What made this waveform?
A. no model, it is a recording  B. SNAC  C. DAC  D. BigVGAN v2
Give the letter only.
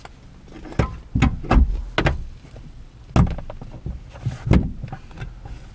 A